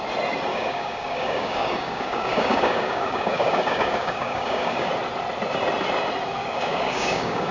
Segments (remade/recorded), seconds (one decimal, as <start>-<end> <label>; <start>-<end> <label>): 0.0-0.5 recorded; 0.5-4.9 remade; 4.9-6.4 recorded; 6.4-7.5 remade